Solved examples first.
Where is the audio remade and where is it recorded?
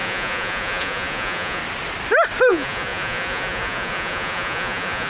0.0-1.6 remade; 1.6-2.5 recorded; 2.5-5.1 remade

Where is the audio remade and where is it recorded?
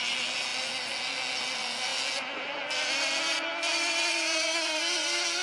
0.0-5.4 recorded